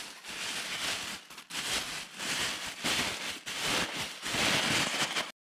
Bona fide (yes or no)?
yes